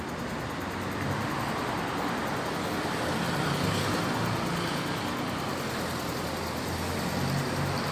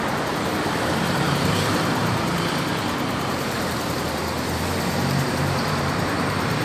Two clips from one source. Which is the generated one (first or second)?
second